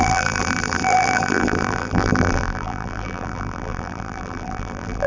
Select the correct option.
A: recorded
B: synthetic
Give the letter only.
B